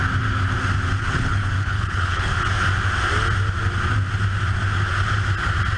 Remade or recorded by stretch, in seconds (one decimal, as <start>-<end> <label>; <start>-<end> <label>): 0.0-1.0 recorded; 1.0-2.3 remade; 2.3-5.8 recorded